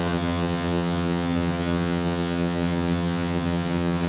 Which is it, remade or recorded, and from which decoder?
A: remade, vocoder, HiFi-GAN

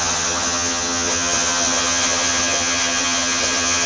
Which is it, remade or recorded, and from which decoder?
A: remade, vocoder, HiFi-GAN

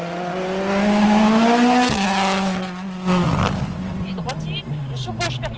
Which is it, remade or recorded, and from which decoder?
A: recorded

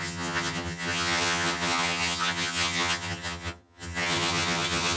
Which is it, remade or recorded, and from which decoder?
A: remade, vocoder, HiFi-GAN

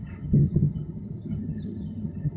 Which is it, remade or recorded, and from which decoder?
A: remade, vocoder, HiFi-GAN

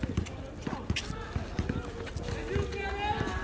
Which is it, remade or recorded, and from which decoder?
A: recorded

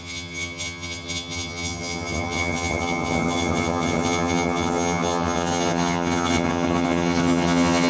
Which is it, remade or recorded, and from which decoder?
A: remade, vocoder, HiFi-GAN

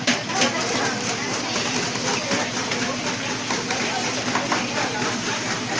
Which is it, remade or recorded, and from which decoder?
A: recorded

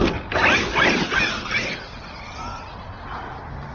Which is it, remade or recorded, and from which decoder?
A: recorded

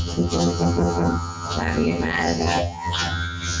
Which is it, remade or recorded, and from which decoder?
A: remade, vocoder, HiFi-GAN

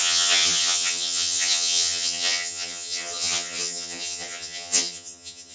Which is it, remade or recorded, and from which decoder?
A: remade, vocoder, HiFi-GAN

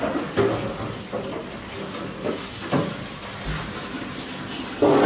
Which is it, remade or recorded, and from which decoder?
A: recorded